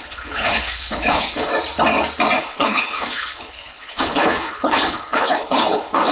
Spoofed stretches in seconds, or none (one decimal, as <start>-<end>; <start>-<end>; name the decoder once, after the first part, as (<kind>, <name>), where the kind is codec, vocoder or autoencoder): 0.0-1.5 (codec, HILCodec); 2.4-6.1